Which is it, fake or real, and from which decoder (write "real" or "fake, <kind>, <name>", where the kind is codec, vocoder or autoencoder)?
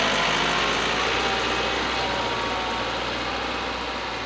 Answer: real